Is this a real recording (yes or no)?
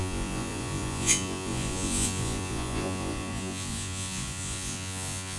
no